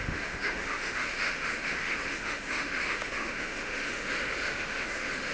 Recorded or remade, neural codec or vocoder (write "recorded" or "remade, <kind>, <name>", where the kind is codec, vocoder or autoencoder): remade, autoencoder, DAC-VAE